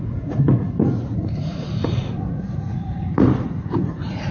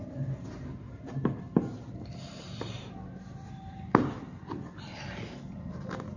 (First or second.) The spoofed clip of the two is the first